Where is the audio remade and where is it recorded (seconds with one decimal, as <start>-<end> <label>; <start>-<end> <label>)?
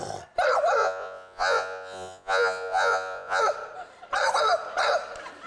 0.0-0.8 recorded; 0.8-3.4 remade; 3.4-5.5 recorded